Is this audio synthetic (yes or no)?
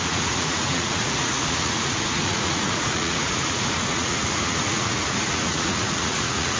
yes